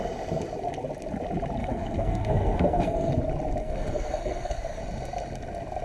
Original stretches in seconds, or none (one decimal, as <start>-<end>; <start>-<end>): 0.0-1.6; 3.1-3.6; 4.8-5.8